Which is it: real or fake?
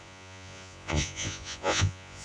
fake